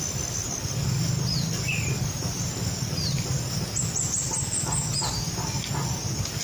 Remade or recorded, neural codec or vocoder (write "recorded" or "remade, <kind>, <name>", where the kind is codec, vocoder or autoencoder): recorded